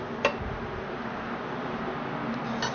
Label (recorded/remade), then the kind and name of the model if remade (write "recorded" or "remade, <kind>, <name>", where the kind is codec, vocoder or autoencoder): recorded